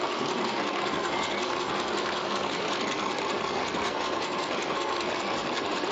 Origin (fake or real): fake